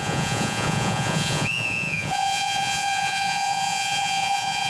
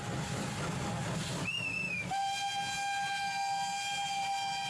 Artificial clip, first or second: first